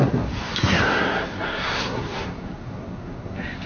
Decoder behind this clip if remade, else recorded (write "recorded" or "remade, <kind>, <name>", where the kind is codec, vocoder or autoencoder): remade, codec, SNAC